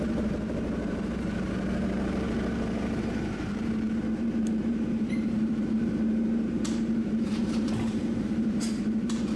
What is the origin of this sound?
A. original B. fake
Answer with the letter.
B